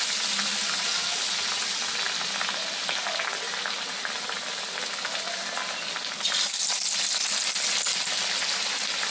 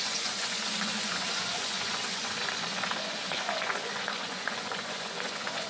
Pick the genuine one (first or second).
first